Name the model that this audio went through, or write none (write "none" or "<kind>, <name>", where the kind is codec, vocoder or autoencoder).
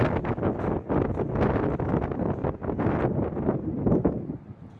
none